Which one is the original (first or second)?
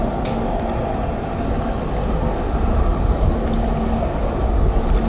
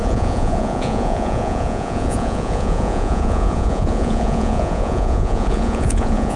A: first